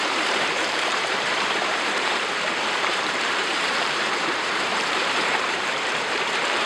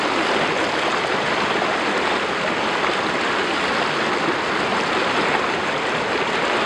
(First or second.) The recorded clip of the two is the second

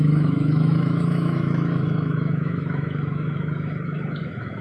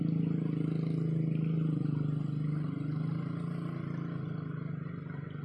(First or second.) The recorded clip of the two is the second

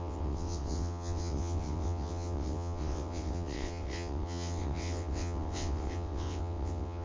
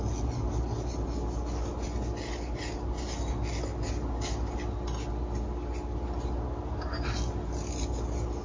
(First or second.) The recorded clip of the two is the second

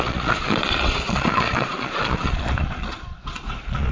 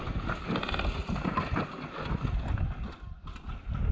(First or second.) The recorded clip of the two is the second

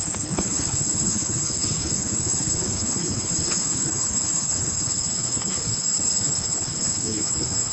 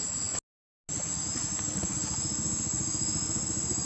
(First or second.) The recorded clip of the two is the second